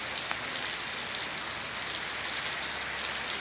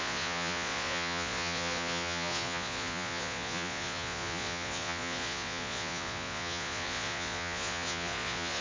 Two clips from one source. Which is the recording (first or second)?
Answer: first